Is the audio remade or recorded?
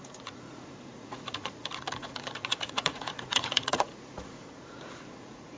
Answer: remade